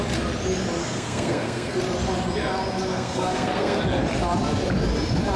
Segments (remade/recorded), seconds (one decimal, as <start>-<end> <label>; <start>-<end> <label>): 0.0-0.8 recorded; 0.8-1.8 remade; 1.8-2.9 recorded; 2.9-3.8 remade; 3.8-5.4 recorded